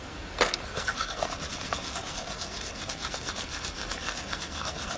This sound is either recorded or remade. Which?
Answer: remade